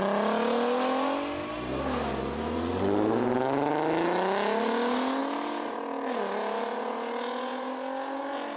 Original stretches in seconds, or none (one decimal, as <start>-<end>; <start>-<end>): 0.0-8.6

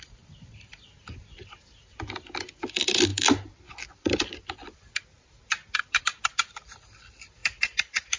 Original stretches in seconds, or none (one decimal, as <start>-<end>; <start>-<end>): 0.0-8.2

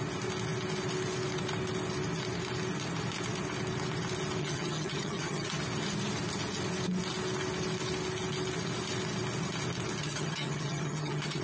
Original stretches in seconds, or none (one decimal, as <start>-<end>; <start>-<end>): 0.0-4.4; 5.6-10.0

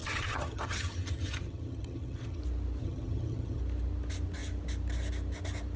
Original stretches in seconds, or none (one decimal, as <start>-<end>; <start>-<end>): 2.4-2.8; 3.6-5.8

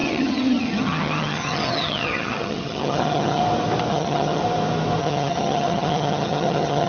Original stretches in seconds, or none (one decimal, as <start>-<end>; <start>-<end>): 3.4-3.9; 4.4-5.0